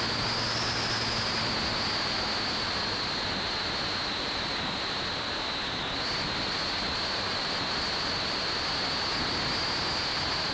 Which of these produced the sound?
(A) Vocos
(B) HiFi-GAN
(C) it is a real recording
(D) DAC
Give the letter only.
C